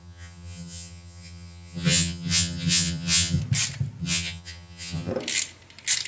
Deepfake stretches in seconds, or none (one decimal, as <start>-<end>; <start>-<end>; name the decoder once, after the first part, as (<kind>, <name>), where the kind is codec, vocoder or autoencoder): 0.0-3.4 (vocoder, HiFi-GAN); 4.0-5.1